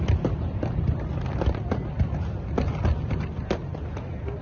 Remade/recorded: recorded